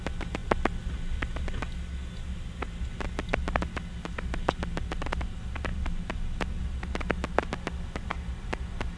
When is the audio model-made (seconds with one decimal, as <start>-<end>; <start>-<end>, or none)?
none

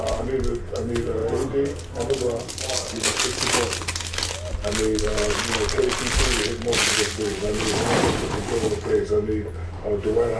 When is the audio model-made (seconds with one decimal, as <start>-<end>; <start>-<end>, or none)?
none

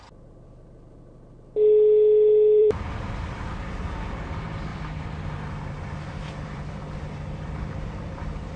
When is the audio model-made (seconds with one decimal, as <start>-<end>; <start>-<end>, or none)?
2.6-3.7; 4.7-8.6

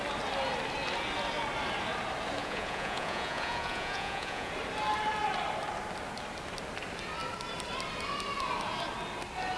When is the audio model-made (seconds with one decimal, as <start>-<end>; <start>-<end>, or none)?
2.4-4.5

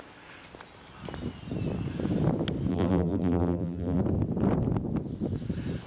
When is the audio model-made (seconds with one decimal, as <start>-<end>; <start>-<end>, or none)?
2.7-4.0

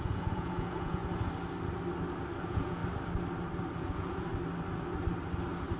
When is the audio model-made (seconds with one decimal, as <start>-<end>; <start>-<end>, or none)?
0.0-1.0; 2.4-2.8; 3.8-4.3